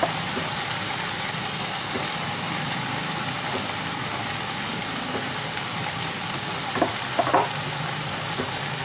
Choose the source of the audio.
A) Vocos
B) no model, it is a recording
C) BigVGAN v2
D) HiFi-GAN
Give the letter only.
B